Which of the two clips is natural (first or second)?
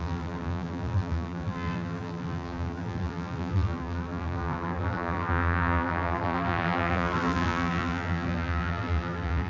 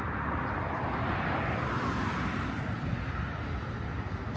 second